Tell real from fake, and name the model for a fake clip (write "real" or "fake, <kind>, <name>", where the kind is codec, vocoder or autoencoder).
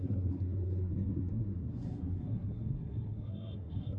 fake, codec, SNAC